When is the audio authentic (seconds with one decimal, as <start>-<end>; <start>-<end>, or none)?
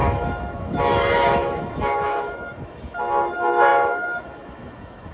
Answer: none